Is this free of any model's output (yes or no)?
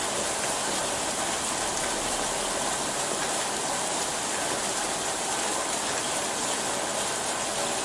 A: no